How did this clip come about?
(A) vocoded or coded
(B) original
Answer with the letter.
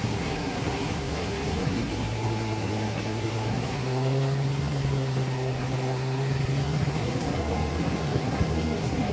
A